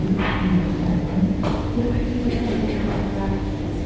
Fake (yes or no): no